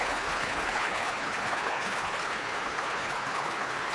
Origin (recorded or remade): remade